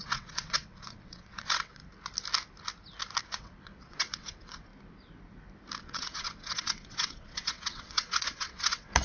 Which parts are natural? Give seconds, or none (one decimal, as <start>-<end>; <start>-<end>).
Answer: 1.8-3.2; 4.7-5.8